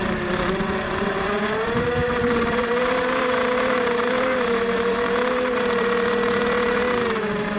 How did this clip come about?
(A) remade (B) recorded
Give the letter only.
A